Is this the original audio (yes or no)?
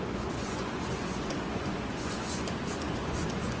no